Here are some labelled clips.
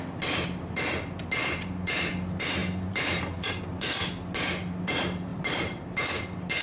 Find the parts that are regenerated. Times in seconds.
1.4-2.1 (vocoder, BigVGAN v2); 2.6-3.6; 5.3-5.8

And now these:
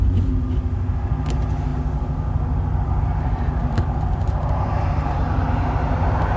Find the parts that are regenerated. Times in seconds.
3.6-5.2 (vocoder, BigVGAN v2)

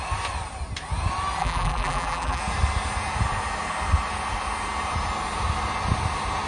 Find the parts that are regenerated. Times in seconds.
1.4-2.4 (vocoder, BigVGAN v2)

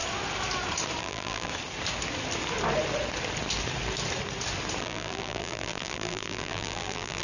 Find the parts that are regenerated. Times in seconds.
1.0-1.5 (vocoder, BigVGAN v2); 4.8-7.2